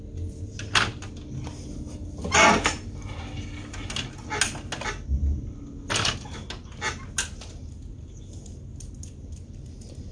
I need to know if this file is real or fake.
real